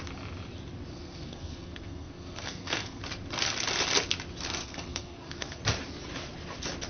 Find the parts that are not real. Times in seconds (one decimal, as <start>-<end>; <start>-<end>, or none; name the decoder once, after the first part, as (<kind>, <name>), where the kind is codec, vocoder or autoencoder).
0.9-3.0 (codec, SNAC); 4.6-5.6